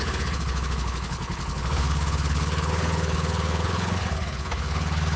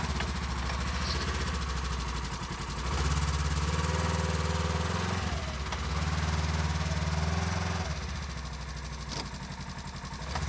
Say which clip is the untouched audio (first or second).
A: second